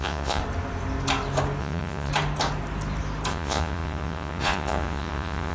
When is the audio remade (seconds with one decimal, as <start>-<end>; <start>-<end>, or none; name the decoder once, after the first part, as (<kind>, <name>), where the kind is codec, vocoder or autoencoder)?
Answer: 0.0-0.4 (vocoder, Vocos); 1.6-2.1; 3.3-5.5